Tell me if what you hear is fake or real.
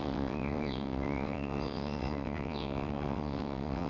fake